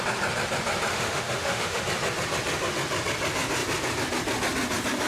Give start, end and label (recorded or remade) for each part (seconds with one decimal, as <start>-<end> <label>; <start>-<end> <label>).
0.0-0.9 recorded; 0.9-1.8 remade; 1.8-5.1 recorded